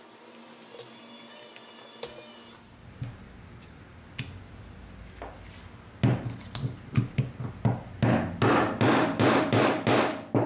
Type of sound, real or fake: real